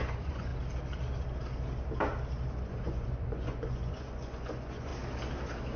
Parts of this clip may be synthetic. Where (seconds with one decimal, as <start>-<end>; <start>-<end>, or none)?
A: 0.0-0.5; 2.6-4.9